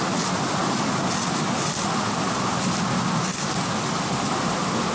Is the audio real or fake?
real